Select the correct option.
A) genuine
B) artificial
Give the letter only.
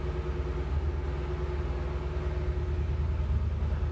A